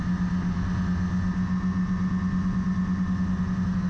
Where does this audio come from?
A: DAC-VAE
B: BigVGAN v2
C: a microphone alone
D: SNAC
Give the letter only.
C